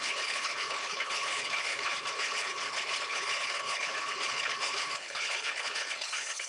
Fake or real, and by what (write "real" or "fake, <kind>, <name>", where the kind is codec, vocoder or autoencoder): fake, codec, HILCodec